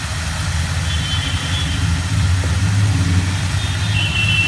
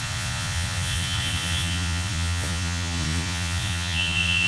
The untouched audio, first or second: first